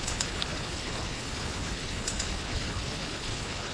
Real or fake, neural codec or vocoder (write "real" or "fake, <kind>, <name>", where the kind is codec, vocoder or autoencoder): fake, codec, HILCodec